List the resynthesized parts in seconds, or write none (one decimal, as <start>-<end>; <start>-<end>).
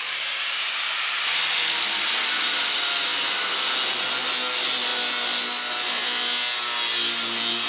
none